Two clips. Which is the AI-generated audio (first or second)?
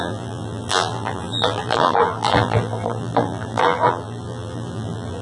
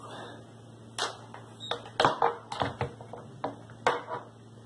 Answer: first